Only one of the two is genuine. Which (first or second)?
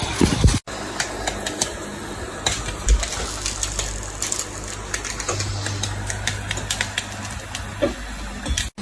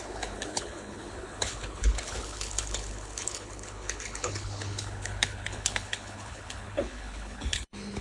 first